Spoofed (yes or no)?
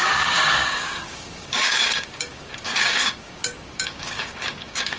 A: yes